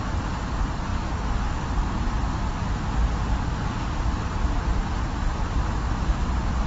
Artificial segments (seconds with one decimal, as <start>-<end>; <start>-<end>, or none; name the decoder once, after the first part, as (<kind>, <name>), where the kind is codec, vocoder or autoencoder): none